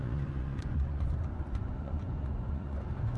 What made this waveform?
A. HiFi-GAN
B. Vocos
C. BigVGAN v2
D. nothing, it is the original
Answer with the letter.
B